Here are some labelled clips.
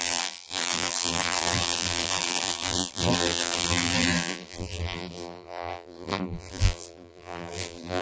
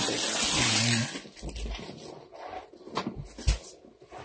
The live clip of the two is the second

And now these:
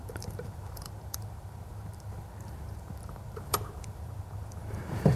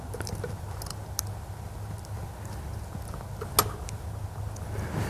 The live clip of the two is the second